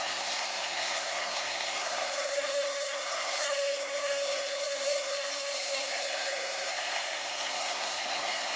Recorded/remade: remade